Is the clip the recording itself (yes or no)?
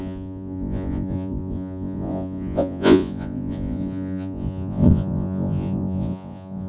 no